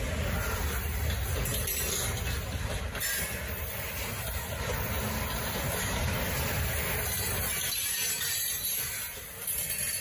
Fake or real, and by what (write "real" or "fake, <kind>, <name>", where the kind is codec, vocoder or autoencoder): real